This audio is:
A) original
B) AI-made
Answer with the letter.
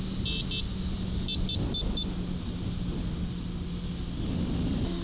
A